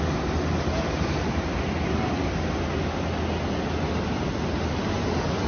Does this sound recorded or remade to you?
recorded